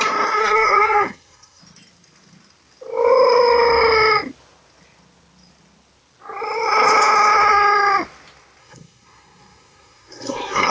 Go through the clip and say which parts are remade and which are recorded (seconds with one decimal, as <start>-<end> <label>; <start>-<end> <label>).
0.0-0.4 recorded; 0.4-1.6 remade; 1.6-8.6 recorded; 8.6-10.7 remade